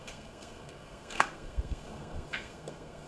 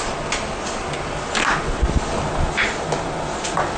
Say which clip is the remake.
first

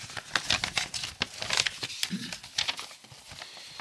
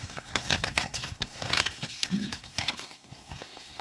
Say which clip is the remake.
second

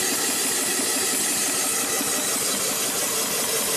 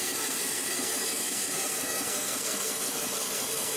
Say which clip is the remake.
second